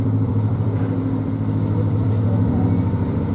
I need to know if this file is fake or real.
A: fake